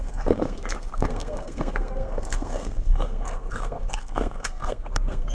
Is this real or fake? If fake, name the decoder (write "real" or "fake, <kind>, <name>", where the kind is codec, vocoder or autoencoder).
fake, codec, SNAC